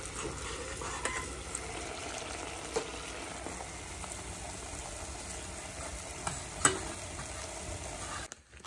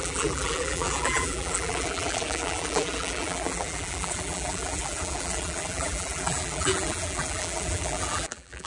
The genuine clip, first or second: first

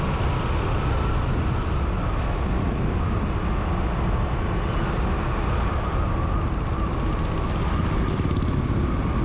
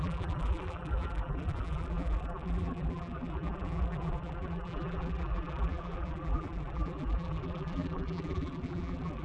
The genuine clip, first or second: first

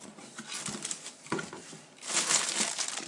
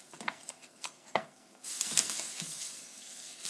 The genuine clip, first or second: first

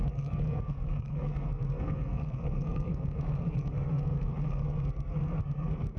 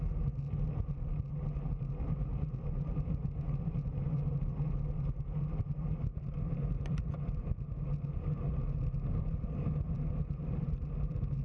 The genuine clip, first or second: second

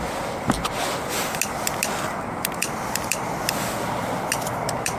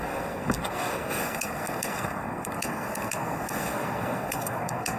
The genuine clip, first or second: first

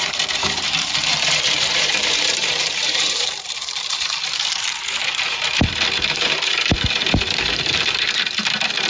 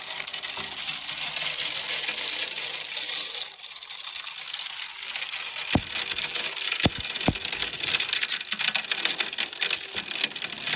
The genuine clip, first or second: second